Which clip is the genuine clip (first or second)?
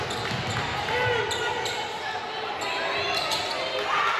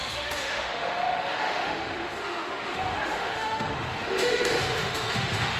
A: first